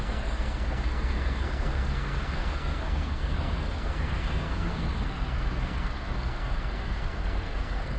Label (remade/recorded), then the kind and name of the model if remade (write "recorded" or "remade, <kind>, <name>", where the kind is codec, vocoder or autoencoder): remade, codec, SNAC